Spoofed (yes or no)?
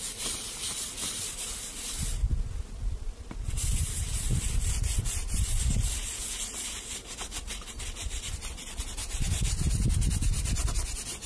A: no